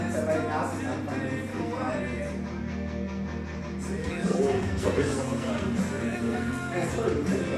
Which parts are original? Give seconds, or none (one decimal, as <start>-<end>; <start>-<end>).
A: 0.0-1.5; 2.0-2.6; 3.6-4.0; 6.9-7.6